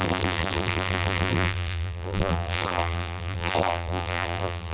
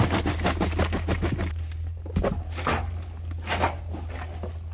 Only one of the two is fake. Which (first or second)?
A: first